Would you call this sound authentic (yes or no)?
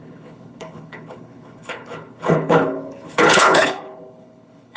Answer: no